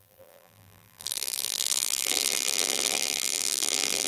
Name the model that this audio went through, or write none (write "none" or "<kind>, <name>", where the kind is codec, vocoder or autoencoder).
vocoder, BigVGAN v2